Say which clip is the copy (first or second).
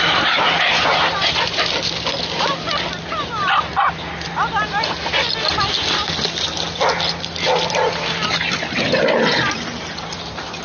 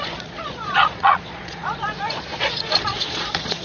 second